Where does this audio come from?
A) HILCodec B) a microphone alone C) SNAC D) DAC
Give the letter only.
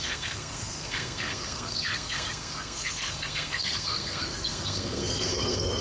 C